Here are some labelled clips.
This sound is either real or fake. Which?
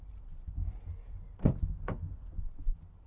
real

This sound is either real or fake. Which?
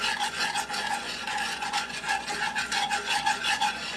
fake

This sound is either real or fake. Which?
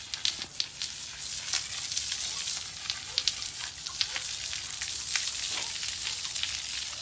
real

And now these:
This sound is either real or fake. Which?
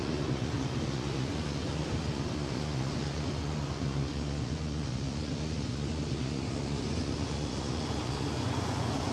fake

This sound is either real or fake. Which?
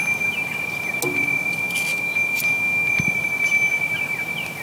real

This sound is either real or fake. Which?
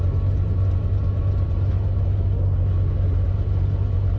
real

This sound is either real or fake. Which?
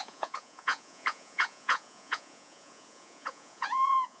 fake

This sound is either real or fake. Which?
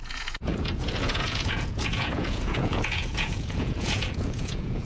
fake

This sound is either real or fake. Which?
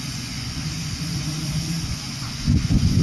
fake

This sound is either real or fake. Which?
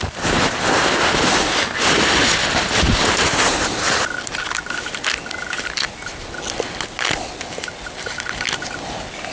real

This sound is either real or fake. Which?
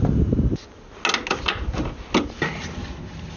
real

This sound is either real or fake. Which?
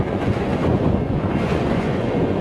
fake